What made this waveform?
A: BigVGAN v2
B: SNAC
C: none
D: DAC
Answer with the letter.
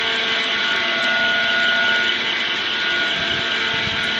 C